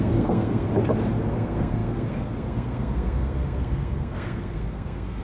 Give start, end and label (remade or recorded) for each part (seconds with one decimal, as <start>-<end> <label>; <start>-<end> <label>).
0.0-0.7 remade; 0.7-1.3 recorded; 1.3-5.2 remade